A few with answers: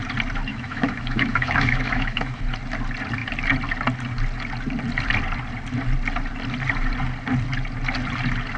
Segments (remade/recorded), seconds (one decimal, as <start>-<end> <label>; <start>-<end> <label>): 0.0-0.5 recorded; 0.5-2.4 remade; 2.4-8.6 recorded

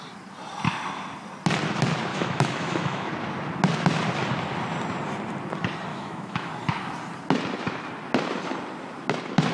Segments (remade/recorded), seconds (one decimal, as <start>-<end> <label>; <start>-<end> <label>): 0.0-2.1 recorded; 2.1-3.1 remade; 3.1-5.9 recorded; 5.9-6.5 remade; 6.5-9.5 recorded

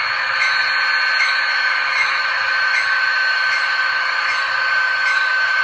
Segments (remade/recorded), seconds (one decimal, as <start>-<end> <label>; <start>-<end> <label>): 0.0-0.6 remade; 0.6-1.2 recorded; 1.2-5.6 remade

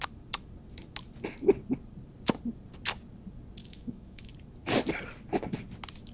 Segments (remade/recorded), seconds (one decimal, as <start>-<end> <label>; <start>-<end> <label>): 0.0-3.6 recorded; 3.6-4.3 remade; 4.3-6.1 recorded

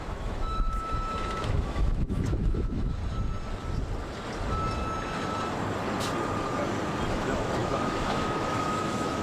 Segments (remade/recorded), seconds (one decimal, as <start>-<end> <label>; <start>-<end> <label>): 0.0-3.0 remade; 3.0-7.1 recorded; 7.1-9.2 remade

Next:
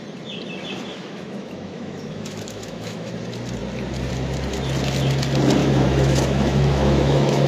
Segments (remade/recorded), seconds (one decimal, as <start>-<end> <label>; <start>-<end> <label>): 0.0-0.9 recorded; 0.9-3.1 remade; 3.1-5.6 recorded; 5.6-7.5 remade